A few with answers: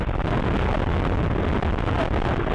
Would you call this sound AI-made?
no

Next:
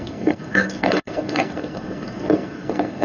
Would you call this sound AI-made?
yes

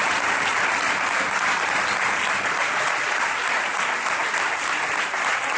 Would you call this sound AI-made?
no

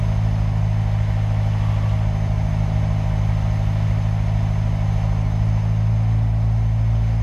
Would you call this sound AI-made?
no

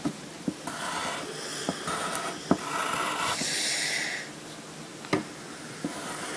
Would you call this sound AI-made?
no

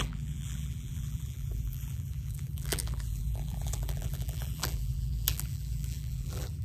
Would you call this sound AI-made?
yes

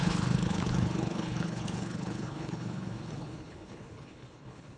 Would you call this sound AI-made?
yes